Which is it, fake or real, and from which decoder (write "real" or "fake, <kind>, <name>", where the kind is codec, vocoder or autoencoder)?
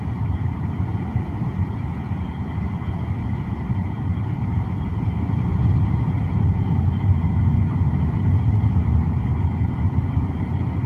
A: real